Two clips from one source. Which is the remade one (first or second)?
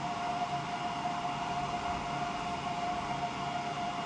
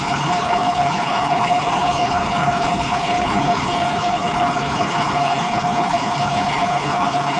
second